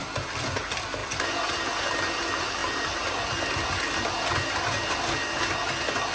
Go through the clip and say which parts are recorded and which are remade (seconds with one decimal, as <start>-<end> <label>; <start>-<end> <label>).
0.0-6.1 recorded